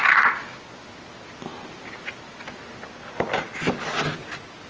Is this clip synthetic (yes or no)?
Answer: no